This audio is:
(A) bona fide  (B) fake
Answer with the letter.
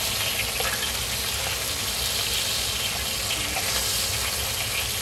A